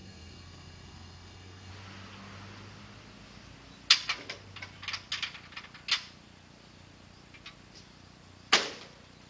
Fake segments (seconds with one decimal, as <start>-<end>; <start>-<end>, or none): 0.0-1.7